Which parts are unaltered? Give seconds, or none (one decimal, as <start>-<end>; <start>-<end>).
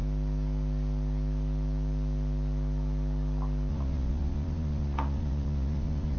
0.0-3.7